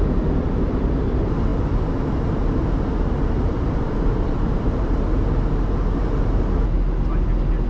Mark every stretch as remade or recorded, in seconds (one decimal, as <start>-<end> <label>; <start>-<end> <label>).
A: 0.0-4.1 recorded; 4.1-4.9 remade; 4.9-7.7 recorded